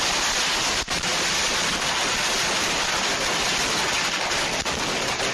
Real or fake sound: real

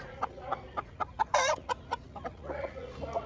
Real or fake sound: fake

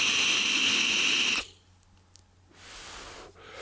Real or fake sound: real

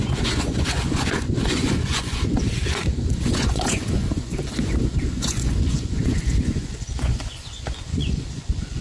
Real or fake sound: fake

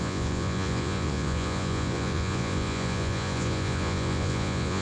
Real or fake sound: fake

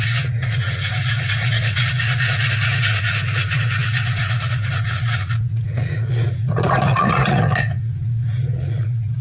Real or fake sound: fake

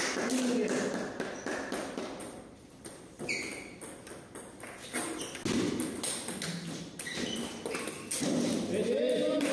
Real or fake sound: real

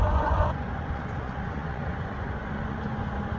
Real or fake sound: fake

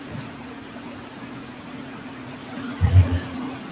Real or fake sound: fake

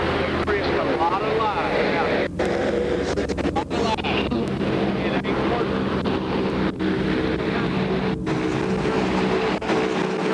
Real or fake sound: real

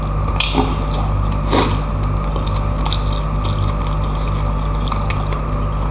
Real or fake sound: real